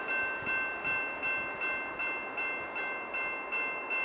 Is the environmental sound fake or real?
real